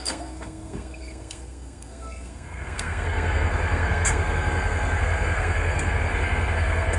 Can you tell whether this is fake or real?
fake